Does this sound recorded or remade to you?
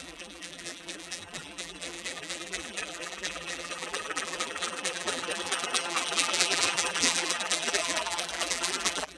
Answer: remade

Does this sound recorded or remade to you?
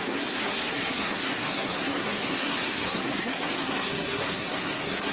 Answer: remade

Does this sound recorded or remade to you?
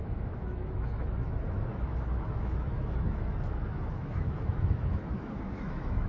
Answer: remade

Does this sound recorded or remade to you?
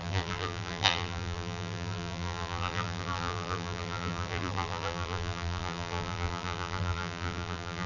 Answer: remade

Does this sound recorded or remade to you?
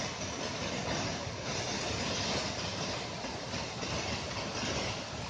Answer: recorded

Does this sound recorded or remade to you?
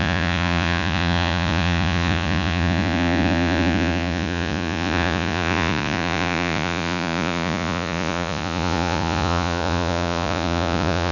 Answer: remade